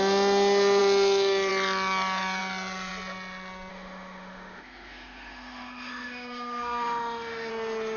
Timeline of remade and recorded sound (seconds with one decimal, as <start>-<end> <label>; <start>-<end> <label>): 0.0-3.7 recorded; 3.7-7.5 remade; 7.5-8.0 recorded